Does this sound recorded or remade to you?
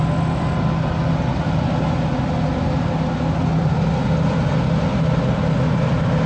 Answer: recorded